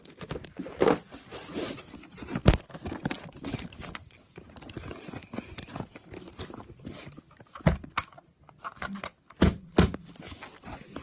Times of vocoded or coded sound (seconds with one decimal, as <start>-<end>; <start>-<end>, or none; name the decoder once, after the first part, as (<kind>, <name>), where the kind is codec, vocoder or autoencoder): none